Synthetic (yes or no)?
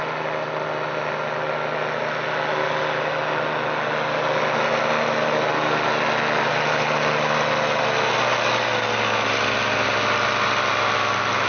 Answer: no